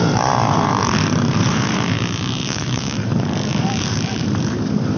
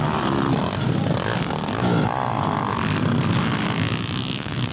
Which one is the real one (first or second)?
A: second